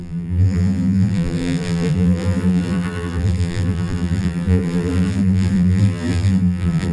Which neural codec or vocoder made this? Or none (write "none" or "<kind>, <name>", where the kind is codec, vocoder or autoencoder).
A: vocoder, BigVGAN v2